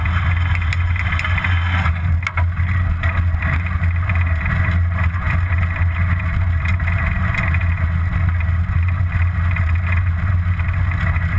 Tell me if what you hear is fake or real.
real